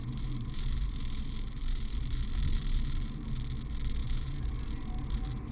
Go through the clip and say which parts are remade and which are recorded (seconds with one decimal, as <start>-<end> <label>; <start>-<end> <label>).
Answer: 0.0-3.3 remade; 3.3-4.0 recorded; 4.0-4.6 remade; 4.6-5.5 recorded